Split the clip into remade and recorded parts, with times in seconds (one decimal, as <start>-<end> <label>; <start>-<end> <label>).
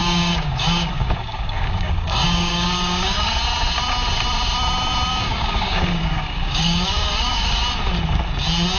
0.0-3.3 remade; 3.3-5.1 recorded; 5.1-7.6 remade; 7.6-8.8 recorded